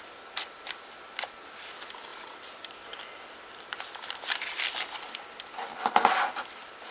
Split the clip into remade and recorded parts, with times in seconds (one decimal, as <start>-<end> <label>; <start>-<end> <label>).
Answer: 0.0-6.9 recorded